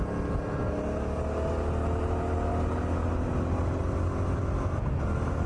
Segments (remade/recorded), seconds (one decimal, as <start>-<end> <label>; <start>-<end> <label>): 0.0-5.5 recorded